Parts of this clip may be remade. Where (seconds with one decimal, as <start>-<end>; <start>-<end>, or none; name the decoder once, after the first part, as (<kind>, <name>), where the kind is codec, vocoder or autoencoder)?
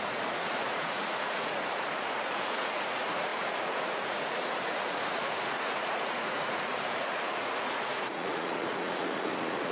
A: 0.0-9.7 (vocoder, Vocos)